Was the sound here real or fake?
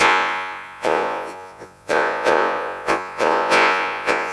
fake